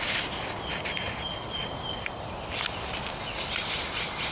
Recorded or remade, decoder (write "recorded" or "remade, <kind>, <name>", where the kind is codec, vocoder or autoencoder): recorded